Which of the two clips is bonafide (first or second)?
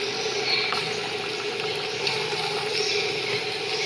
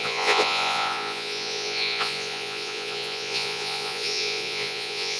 first